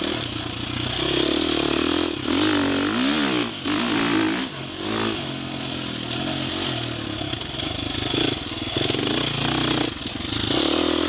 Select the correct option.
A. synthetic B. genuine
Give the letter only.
B